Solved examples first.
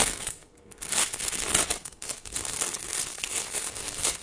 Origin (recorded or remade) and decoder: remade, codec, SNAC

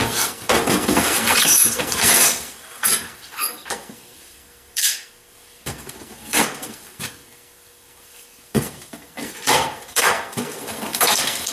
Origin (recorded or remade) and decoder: remade, codec, SNAC